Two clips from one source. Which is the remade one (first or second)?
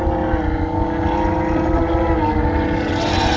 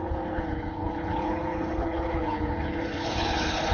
second